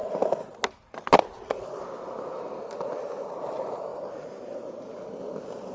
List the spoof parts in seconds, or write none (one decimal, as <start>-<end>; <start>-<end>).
none